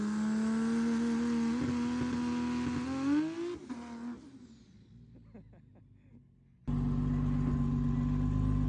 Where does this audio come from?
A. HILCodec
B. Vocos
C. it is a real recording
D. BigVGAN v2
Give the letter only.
C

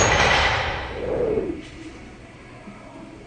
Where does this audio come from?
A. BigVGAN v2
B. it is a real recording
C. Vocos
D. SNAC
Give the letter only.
A